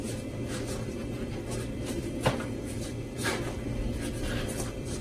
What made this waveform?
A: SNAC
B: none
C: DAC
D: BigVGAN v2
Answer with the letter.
D